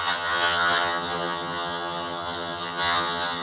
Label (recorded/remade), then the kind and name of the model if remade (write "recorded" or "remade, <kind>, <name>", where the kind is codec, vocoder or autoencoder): remade, vocoder, HiFi-GAN